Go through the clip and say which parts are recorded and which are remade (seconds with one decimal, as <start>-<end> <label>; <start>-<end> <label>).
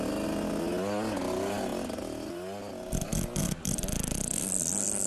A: 0.0-5.1 recorded